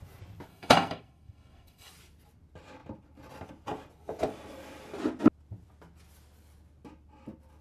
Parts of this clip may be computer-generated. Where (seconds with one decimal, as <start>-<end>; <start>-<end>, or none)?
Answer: 0.5-1.9